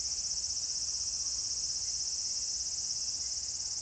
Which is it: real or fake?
fake